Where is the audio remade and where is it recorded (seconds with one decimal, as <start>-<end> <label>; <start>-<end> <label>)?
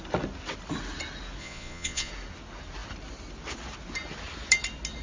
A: 0.0-1.4 recorded; 1.4-2.1 remade; 2.1-5.0 recorded